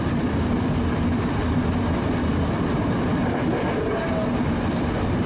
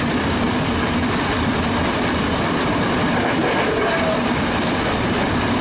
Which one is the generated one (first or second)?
second